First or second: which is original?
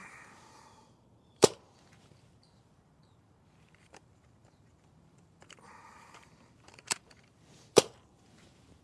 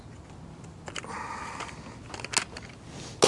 second